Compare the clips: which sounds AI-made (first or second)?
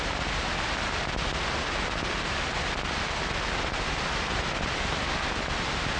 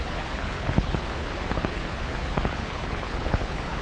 second